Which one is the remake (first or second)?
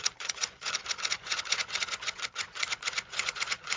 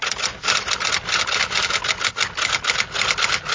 first